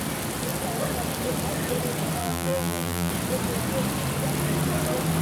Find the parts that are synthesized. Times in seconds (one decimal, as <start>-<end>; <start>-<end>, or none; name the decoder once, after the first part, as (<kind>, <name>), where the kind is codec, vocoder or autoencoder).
2.2-3.1 (vocoder, BigVGAN v2)